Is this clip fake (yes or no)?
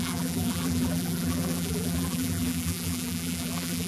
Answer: yes